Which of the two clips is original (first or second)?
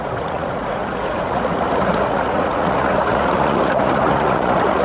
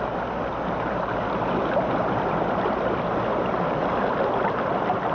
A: second